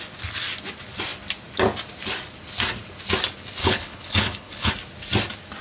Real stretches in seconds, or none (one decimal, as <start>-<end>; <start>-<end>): 0.0-3.6; 4.7-5.6